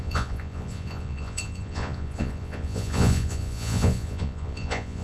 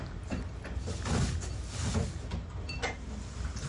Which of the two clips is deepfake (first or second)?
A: first